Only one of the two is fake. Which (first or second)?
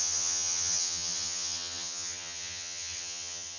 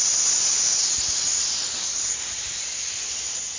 first